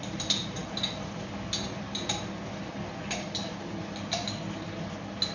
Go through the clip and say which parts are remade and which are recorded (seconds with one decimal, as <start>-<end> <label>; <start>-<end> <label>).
0.0-5.3 recorded